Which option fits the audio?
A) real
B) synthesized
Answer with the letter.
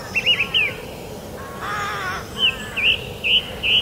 A